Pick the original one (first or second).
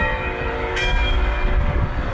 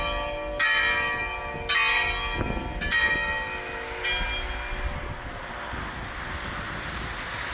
second